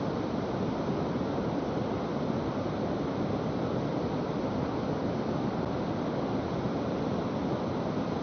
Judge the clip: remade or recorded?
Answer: remade